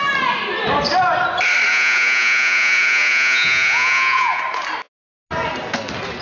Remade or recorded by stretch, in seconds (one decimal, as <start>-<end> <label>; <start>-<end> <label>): 0.0-1.7 recorded; 1.7-4.4 remade; 4.4-6.2 recorded